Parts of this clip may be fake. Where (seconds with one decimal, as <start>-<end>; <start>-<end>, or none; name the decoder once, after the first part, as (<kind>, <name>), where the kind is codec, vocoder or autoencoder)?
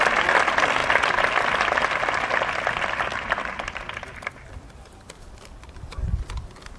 none